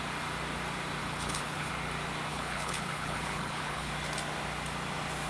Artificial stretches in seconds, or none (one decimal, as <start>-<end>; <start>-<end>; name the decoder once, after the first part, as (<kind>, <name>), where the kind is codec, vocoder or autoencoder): 1.0-1.7 (codec, HILCodec); 2.3-3.9